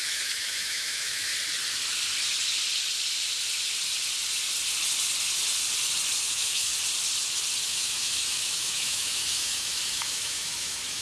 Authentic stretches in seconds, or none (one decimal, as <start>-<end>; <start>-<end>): 1.3-6.3; 6.7-7.6

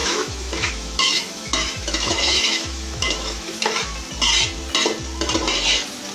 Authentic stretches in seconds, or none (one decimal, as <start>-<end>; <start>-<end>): 3.7-6.1

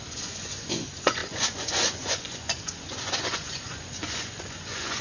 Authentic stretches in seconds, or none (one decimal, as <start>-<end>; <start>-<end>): none

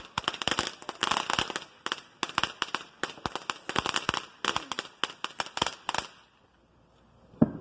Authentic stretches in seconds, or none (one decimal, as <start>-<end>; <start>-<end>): 0.0-7.6

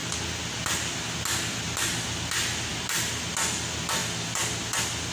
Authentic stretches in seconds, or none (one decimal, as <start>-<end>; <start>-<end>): 0.0-5.1

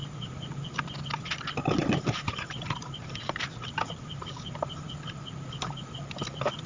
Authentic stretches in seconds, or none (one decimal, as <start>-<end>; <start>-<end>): 0.6-1.8; 4.7-6.7

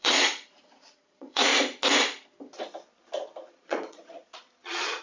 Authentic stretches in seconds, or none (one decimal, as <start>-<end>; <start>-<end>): 1.5-3.5